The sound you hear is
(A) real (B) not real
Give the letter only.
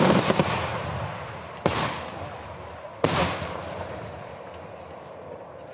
B